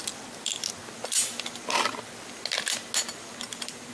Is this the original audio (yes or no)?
yes